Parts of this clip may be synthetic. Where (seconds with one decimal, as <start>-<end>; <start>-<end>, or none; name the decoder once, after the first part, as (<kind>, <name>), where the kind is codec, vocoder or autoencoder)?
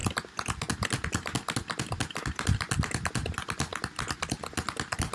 none